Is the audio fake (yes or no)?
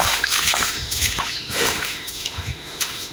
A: yes